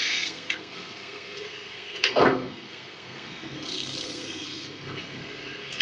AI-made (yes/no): yes